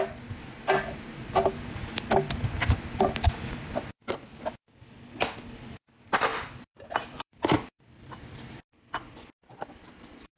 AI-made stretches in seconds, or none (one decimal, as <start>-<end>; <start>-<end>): 6.3-10.4